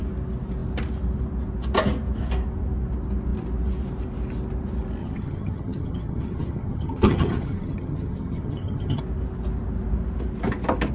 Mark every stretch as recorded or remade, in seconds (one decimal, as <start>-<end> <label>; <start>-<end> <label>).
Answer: 0.0-5.0 recorded; 5.0-9.0 remade; 9.0-10.9 recorded